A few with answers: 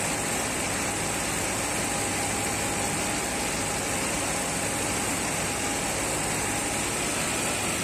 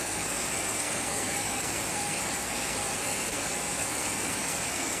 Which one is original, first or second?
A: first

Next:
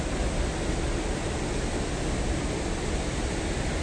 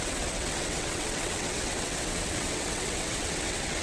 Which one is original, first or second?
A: first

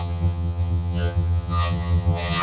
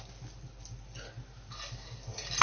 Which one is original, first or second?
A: second